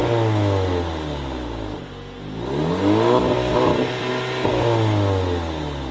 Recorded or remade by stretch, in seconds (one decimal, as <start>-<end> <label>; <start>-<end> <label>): 0.0-3.5 recorded; 3.5-4.1 remade; 4.1-5.9 recorded